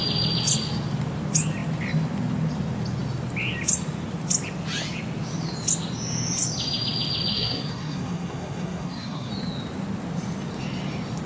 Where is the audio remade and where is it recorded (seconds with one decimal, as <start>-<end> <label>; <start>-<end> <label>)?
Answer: 0.0-7.3 recorded; 7.3-9.3 remade; 9.3-11.3 recorded